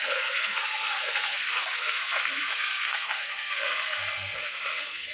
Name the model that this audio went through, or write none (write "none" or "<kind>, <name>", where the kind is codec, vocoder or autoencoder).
codec, SNAC